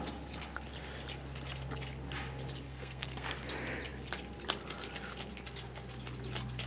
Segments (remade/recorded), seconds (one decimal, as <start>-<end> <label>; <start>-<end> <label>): 0.0-2.7 recorded; 2.7-3.3 remade; 3.3-6.7 recorded